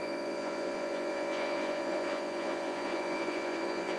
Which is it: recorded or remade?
remade